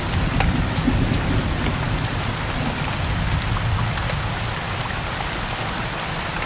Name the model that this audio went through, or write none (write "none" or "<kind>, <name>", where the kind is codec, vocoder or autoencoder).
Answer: none